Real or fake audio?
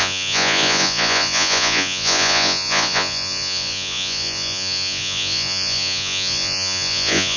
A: fake